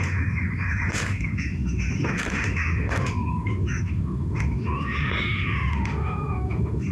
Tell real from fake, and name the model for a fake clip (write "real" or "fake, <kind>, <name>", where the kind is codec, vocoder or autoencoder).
fake, autoencoder, DAC-VAE